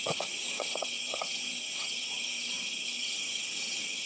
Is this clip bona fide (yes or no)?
no